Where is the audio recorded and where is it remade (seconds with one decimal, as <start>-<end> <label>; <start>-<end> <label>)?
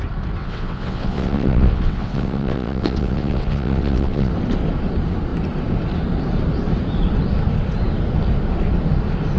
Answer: 0.0-0.4 recorded; 0.4-4.3 remade; 4.3-9.4 recorded